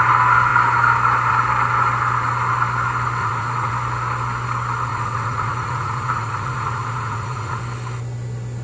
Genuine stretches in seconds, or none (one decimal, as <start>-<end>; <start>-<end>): 0.0-3.2; 3.7-4.9; 7.6-8.6